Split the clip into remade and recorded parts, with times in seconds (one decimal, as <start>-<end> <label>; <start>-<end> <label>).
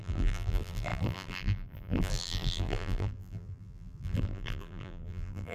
0.0-5.5 remade